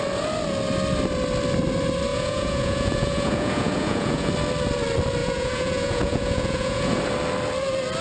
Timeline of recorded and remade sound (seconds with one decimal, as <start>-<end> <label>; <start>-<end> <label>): 0.0-2.1 recorded; 2.1-4.3 remade; 4.3-5.2 recorded; 5.2-7.0 remade; 7.0-8.0 recorded